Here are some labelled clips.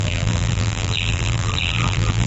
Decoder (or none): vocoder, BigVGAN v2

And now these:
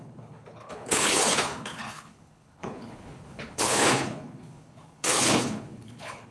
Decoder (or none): codec, HILCodec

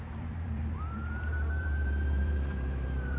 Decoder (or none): vocoder, BigVGAN v2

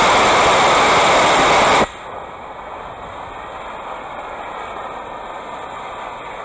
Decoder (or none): none